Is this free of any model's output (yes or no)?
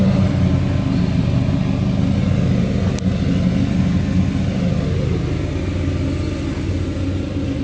yes